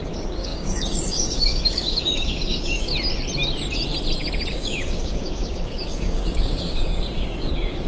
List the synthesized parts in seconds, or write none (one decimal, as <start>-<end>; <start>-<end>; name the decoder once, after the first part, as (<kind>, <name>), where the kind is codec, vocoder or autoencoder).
0.0-2.9 (codec, DAC); 4.5-7.9

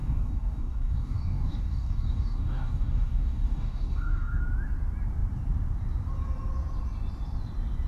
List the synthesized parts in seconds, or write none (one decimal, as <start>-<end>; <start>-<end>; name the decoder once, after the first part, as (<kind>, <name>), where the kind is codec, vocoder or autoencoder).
0.0-4.4 (codec, DAC)

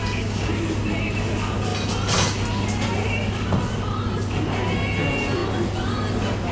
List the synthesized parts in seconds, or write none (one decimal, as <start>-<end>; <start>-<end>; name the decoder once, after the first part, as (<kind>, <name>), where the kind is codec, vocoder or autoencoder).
0.0-0.5 (codec, DAC)